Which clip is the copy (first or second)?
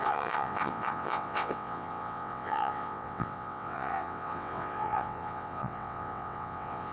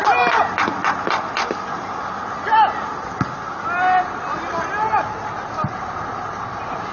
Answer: first